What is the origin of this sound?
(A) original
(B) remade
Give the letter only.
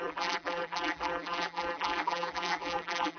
B